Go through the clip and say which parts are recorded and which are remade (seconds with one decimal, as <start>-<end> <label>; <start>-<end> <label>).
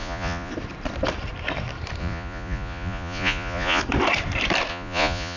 0.0-0.5 remade; 0.5-2.0 recorded; 2.0-3.8 remade; 3.8-4.7 recorded; 4.7-5.4 remade